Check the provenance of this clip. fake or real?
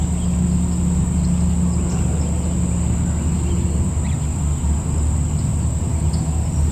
real